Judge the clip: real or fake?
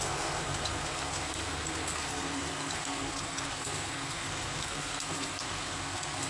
fake